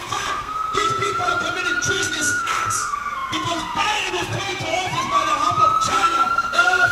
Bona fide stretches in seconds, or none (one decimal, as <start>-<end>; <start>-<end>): 1.3-1.9; 4.6-5.9